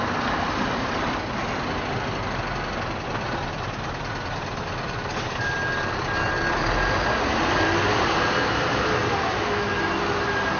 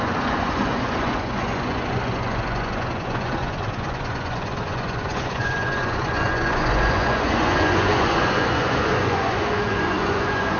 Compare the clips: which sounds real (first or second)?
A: first